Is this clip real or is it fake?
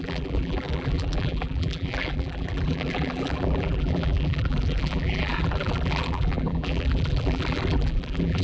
fake